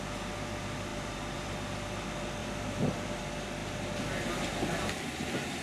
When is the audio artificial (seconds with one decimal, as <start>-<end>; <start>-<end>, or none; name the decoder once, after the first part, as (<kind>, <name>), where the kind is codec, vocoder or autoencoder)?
0.9-1.7 (vocoder, BigVGAN v2); 2.4-3.2